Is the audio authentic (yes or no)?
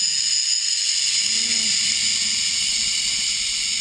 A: yes